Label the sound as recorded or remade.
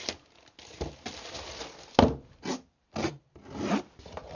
recorded